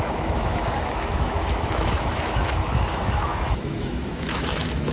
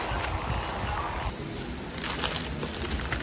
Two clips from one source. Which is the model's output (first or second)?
first